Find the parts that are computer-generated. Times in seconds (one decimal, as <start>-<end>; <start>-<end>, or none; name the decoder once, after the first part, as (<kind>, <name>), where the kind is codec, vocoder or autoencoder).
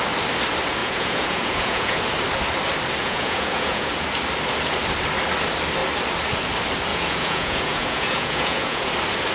0.8-2.0 (vocoder, Vocos); 3.0-3.9; 6.9-8.9